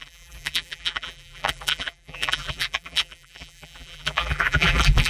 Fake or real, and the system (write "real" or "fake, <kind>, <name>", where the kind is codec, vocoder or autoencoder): fake, vocoder, BigVGAN v2